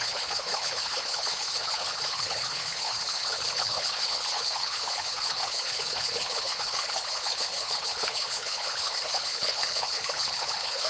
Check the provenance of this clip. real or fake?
fake